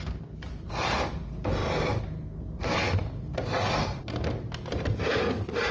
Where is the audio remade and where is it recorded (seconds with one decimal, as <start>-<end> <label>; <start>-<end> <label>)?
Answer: 0.0-5.7 recorded